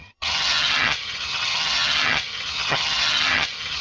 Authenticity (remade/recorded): remade